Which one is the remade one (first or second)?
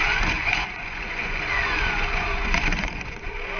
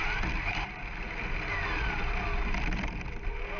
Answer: first